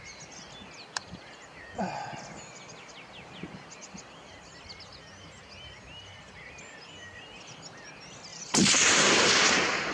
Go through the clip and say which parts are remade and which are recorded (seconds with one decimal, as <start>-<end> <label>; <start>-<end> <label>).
0.0-8.3 recorded; 8.3-9.5 remade; 9.5-9.9 recorded